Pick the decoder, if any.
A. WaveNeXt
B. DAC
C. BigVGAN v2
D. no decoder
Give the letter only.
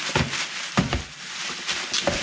D